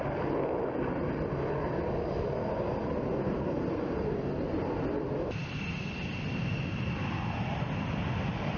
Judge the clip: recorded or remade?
recorded